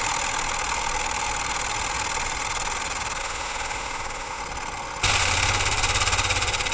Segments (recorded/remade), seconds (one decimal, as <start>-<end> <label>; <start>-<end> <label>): 0.0-3.2 recorded; 3.2-4.4 remade; 4.4-6.7 recorded